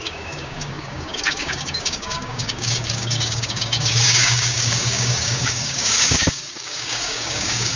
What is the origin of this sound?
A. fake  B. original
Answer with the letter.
A